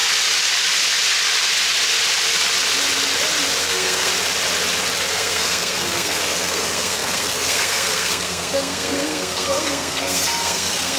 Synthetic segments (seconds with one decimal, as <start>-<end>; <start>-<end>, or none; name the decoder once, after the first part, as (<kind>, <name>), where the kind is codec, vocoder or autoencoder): 3.6-4.1 (codec, SNAC); 5.1-11.0